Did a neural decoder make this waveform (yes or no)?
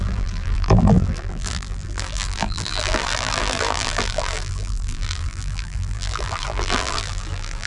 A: yes